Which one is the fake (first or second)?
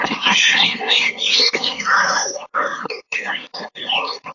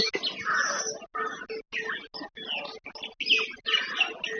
first